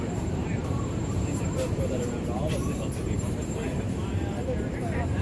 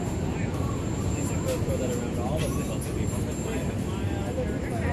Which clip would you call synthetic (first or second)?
first